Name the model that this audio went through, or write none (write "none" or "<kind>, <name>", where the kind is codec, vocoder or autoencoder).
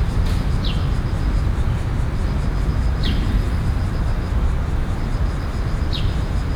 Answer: none